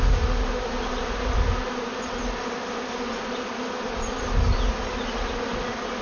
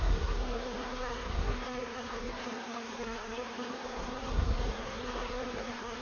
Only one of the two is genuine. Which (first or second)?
first